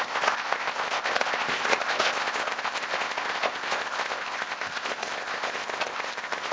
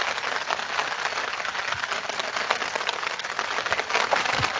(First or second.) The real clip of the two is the second